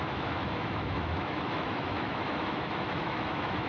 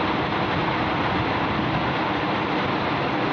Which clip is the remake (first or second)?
first